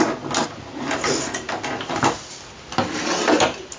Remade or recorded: recorded